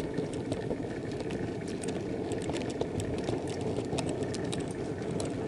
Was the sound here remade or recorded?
remade